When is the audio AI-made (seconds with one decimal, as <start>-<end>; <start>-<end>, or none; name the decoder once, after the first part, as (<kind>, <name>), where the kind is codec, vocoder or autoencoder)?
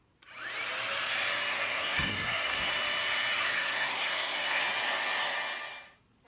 1.5-2.7 (codec, SNAC); 3.4-4.6